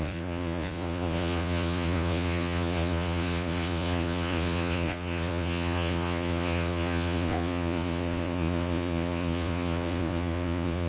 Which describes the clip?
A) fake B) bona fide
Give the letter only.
A